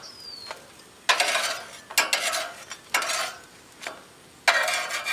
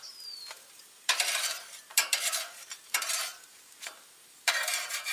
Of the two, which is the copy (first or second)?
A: second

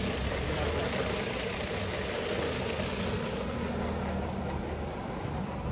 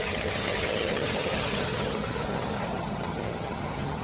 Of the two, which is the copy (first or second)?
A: second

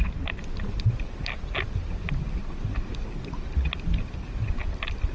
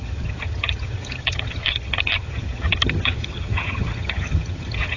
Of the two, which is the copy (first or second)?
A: second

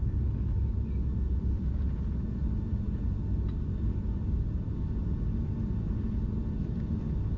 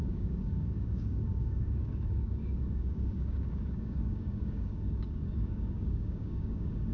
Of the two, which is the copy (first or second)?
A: second